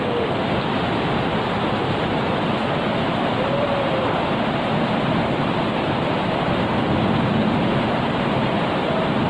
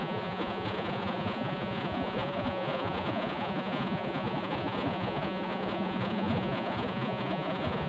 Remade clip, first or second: second